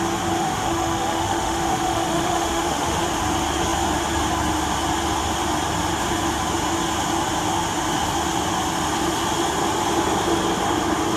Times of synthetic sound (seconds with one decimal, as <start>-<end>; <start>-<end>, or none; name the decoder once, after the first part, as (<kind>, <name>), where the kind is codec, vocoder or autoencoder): 0.4-3.0 (autoencoder, DAC-VAE)